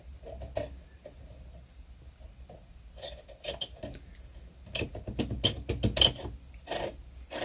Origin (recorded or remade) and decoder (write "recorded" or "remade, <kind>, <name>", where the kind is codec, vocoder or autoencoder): recorded